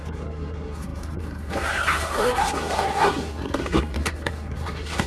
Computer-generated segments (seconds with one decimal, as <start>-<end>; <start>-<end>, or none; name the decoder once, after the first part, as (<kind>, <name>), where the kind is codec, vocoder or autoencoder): 0.0-5.1 (codec, SNAC)